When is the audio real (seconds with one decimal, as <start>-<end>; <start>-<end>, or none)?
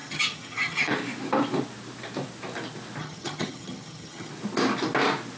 0.9-3.0; 4.3-5.4